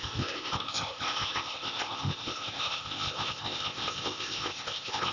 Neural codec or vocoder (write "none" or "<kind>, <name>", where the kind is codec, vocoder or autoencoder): codec, ZipCodec